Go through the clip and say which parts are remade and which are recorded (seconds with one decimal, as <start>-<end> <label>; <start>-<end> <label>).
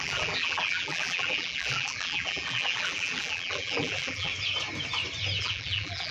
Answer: 0.0-4.3 remade; 4.3-5.4 recorded; 5.4-6.1 remade